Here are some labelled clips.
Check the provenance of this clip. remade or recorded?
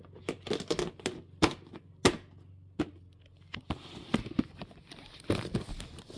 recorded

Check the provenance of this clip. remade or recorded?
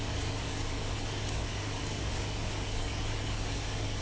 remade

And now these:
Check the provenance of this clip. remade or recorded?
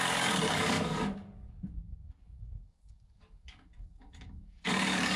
remade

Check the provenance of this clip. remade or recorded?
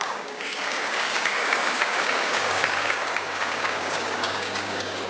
remade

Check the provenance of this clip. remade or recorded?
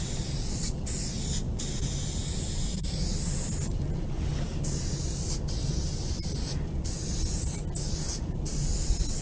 recorded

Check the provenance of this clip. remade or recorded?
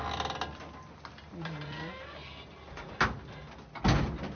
recorded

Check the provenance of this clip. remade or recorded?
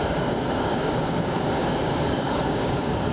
remade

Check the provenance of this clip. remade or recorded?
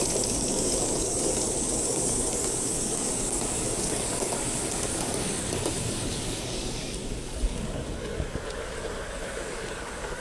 remade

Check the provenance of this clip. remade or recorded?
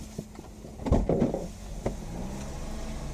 recorded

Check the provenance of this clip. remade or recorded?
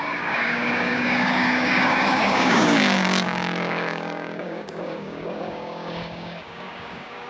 remade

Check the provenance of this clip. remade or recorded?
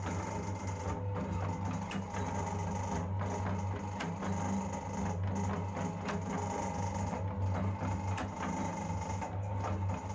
recorded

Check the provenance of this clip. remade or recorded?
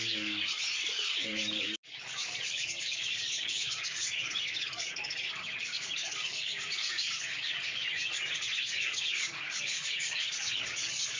remade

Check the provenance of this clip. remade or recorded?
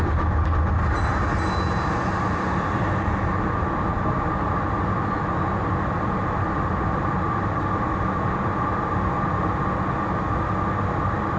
recorded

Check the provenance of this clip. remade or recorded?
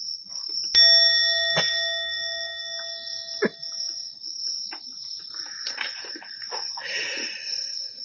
recorded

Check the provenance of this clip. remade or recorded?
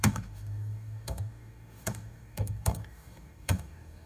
remade